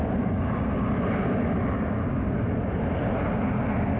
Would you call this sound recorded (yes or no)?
yes